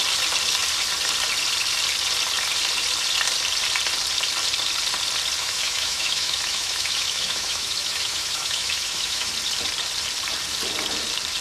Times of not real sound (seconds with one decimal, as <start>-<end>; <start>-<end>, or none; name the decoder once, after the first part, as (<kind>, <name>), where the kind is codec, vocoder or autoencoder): 5.4-9.3 (autoencoder, DAC-VAE)